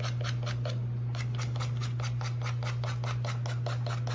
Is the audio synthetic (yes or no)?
no